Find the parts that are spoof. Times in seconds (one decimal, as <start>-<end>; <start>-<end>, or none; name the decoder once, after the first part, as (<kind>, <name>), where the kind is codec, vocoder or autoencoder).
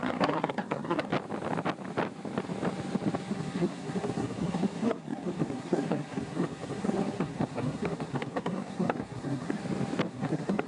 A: 0.0-1.1 (codec, SNAC); 3.3-9.6; 10.1-10.7